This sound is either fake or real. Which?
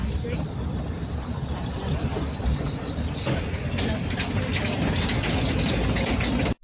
real